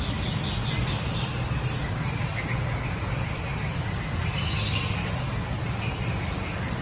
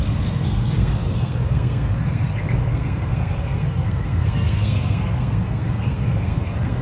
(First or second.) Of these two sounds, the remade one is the second